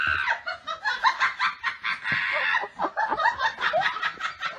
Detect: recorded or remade recorded